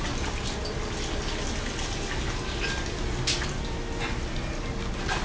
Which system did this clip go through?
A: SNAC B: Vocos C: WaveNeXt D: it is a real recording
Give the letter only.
D